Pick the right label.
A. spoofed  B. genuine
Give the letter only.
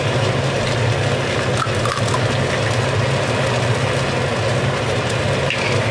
B